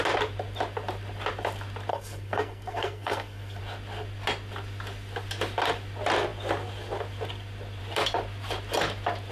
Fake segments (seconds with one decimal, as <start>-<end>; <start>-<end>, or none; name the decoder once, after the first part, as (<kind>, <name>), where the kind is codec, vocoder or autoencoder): 1.9-3.6 (codec, SNAC)